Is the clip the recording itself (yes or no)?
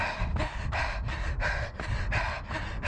yes